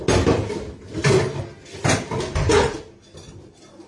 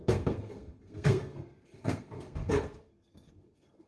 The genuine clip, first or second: first